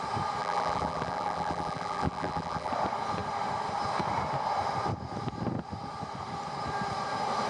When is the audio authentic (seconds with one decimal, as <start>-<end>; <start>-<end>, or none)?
0.0-0.4; 2.7-7.5